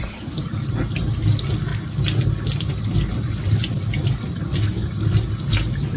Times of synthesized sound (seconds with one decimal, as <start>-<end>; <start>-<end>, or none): none